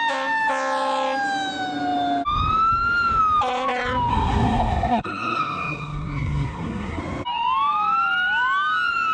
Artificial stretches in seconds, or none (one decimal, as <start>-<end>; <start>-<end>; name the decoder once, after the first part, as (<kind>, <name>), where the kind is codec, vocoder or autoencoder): 4.1-7.0 (codec, SNAC)